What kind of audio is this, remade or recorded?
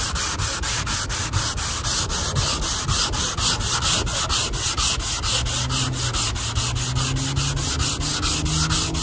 recorded